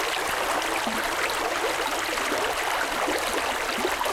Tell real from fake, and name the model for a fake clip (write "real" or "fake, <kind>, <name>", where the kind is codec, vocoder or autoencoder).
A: real